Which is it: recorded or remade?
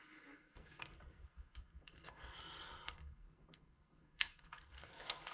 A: remade